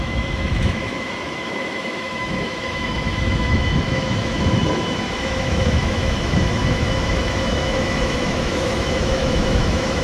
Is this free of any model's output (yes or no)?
no